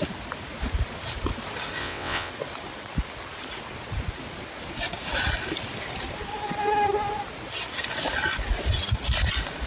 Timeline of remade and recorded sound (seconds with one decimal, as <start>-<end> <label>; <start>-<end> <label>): 0.0-1.8 recorded; 1.8-2.3 remade; 2.3-9.7 recorded